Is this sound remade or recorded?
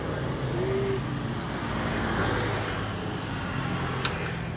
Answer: recorded